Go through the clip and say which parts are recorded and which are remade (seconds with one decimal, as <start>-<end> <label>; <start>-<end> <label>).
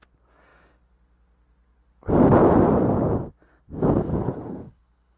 0.0-4.1 recorded; 4.1-5.2 remade